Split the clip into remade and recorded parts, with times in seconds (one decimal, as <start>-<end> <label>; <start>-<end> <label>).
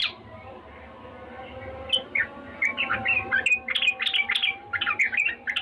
0.0-0.6 remade; 0.6-5.6 recorded